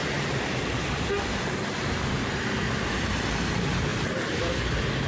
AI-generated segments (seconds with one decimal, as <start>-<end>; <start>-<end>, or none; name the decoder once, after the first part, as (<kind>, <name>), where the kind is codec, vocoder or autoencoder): none